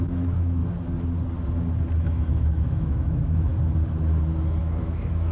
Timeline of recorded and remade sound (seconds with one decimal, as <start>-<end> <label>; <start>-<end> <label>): 0.0-0.6 remade; 0.6-2.3 recorded; 2.3-3.5 remade; 3.5-4.6 recorded; 4.6-5.3 remade